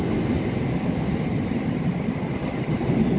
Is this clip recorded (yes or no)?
yes